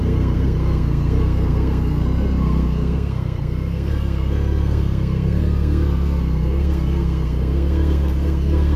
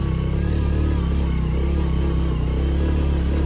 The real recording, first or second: second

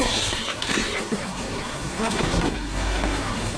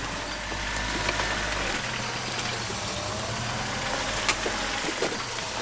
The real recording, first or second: second